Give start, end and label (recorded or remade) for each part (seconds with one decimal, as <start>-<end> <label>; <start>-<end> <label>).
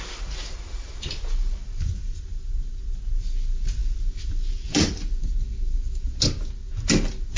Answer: 0.0-7.4 recorded